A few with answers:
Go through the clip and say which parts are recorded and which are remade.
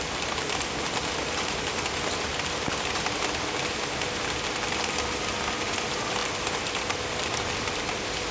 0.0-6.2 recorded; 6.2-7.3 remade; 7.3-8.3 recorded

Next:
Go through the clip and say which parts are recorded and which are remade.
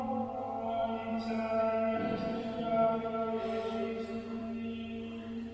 0.0-5.5 recorded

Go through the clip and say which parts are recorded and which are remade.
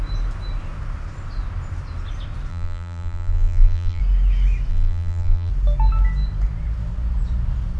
0.0-2.5 recorded; 2.5-4.0 remade; 4.0-4.7 recorded; 4.7-5.5 remade; 5.5-7.8 recorded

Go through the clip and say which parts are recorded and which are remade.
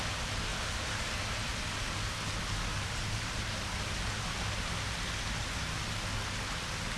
0.0-2.7 recorded; 2.7-4.0 remade; 4.0-7.0 recorded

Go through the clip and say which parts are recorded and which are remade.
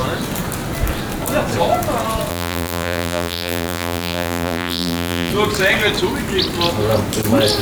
0.0-2.3 recorded; 2.3-5.3 remade; 5.3-7.6 recorded